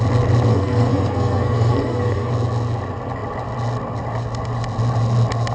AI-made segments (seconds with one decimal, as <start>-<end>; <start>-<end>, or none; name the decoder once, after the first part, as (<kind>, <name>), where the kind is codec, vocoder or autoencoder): 0.5-2.3 (codec, SNAC)